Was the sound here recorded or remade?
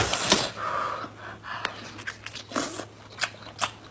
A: recorded